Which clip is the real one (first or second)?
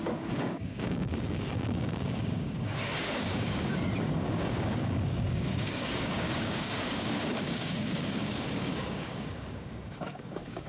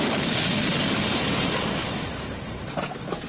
second